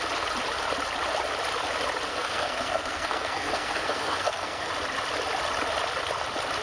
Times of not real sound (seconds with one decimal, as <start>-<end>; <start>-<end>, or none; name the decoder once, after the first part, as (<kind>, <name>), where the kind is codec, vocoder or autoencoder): 2.1-4.7 (codec, SNAC)